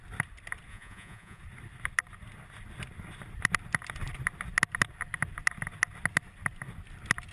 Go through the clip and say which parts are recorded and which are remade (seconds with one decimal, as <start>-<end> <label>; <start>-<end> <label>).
0.0-0.7 recorded; 0.7-1.4 remade; 1.4-7.3 recorded